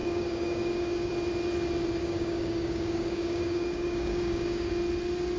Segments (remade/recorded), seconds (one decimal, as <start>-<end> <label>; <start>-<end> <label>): 0.0-1.1 remade; 1.1-2.0 recorded; 2.0-4.7 remade; 4.7-5.4 recorded